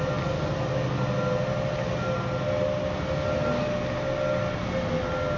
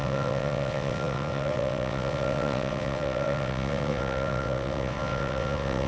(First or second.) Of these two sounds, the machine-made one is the second